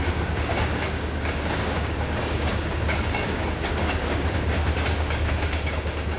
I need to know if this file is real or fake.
fake